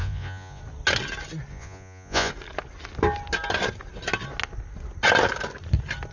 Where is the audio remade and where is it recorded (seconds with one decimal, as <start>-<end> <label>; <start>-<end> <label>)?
0.0-0.6 remade; 0.6-1.5 recorded; 1.5-2.3 remade; 2.3-6.1 recorded